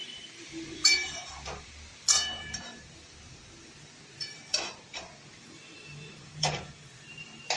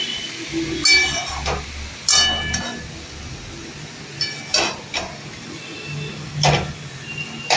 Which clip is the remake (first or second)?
first